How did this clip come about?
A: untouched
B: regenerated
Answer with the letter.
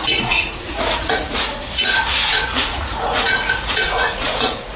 B